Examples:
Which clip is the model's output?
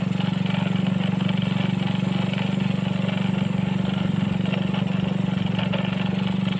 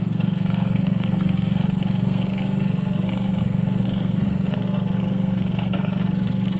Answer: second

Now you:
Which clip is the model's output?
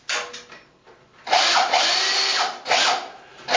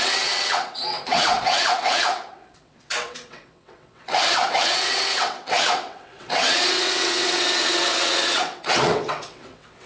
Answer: second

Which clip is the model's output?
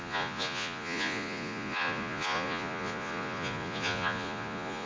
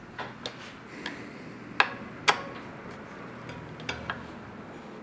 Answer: first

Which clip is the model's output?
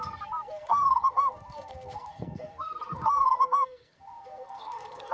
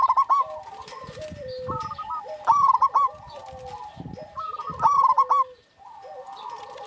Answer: first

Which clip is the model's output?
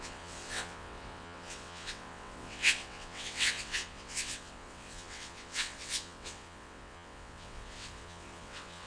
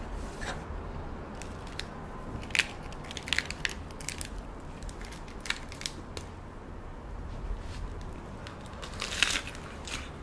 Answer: first